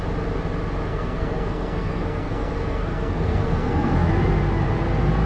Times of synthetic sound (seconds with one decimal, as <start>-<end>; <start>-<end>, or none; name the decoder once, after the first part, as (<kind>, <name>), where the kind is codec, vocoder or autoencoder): 0.9-4.1 (codec, SNAC)